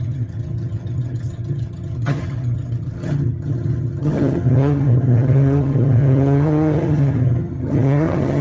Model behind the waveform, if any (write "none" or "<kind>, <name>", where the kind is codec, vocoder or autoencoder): vocoder, HiFi-GAN